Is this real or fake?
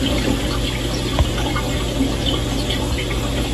real